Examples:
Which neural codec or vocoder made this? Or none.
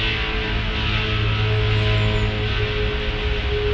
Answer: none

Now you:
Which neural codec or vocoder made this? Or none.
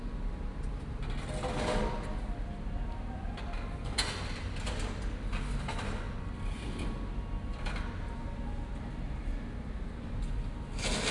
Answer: none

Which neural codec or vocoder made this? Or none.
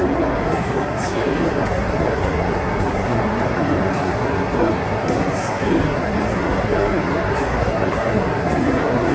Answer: codec, SNAC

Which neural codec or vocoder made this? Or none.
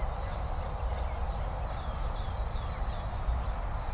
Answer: none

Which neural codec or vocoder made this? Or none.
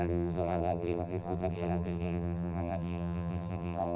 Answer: vocoder, BigVGAN v2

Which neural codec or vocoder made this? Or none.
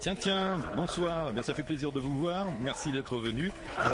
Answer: codec, HILCodec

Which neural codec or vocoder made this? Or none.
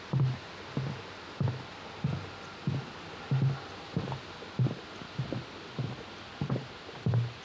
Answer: none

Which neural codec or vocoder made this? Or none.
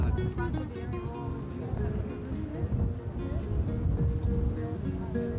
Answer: none